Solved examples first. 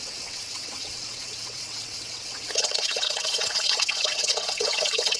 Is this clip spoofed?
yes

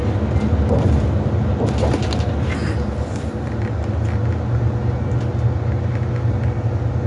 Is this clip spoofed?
no